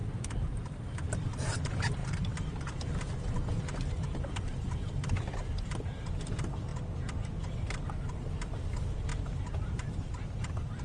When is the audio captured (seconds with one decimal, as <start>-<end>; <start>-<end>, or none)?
2.0-2.5; 6.7-7.6; 9.1-10.4